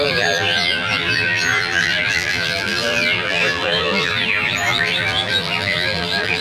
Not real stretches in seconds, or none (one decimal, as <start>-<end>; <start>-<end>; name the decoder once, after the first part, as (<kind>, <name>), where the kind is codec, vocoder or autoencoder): 0.0-6.4 (vocoder, BigVGAN v2)